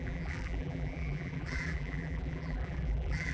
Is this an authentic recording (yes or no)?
no